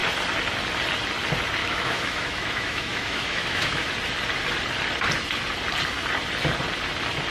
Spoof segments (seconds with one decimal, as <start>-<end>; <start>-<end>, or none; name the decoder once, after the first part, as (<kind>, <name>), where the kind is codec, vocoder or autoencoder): 1.6-3.9 (autoencoder, DAC-VAE)